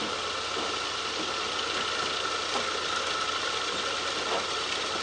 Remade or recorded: recorded